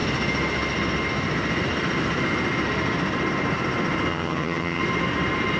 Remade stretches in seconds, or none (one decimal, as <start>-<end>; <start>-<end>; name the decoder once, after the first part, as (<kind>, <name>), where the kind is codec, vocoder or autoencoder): 4.1-4.8 (vocoder, HiFi-GAN)